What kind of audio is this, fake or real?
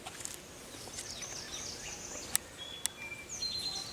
real